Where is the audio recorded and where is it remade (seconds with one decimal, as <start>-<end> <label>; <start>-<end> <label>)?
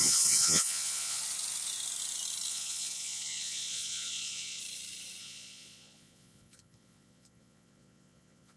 0.0-1.2 remade; 1.2-2.5 recorded; 2.5-4.6 remade; 4.6-5.2 recorded; 5.2-8.6 remade